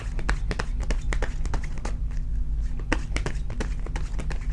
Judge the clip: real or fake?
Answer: real